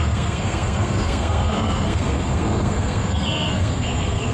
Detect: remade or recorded remade